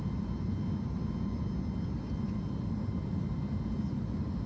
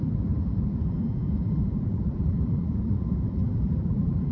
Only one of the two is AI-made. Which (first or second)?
second